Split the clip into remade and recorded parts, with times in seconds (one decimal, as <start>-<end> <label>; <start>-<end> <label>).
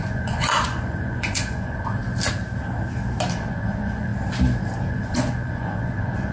0.0-2.0 remade; 2.0-3.3 recorded; 3.3-4.1 remade; 4.1-4.9 recorded; 4.9-6.3 remade